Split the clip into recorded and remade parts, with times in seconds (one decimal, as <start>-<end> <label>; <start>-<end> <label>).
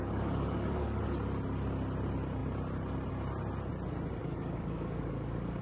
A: 0.0-1.0 remade; 1.0-4.2 recorded; 4.2-5.6 remade